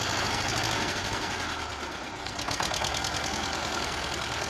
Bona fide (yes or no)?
no